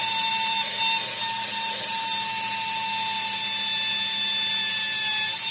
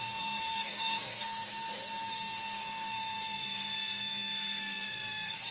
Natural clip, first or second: first